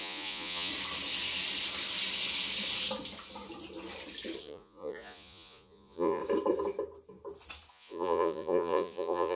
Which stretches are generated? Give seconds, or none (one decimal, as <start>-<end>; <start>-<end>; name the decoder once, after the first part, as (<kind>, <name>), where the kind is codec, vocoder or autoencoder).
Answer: 0.0-0.7 (vocoder, Vocos); 4.4-6.2; 7.7-9.4